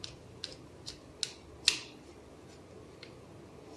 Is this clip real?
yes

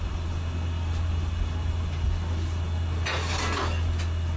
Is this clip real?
yes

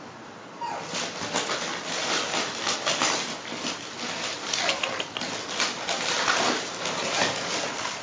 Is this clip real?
yes